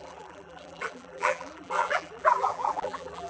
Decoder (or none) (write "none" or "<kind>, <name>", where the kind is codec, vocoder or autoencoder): vocoder, BigVGAN v2